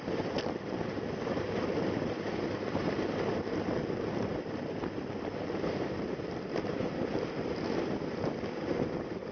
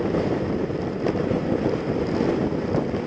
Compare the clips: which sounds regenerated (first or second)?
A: first